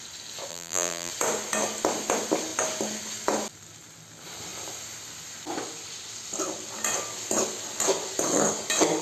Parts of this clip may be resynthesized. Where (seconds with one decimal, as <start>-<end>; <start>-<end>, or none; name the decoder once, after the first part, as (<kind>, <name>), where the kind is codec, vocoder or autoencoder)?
0.5-1.1 (vocoder, BigVGAN v2)